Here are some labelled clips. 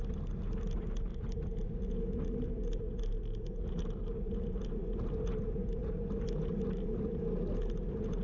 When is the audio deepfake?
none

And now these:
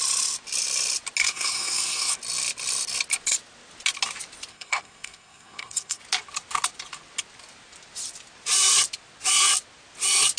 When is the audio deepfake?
1.2-2.2; 4.5-6.0

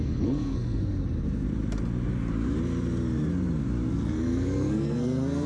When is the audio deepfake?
0.0-0.8; 3.9-5.5